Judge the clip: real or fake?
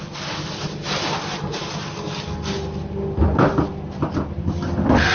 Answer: real